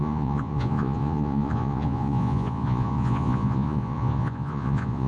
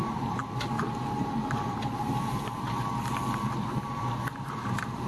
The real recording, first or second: second